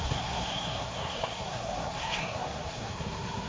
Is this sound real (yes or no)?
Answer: no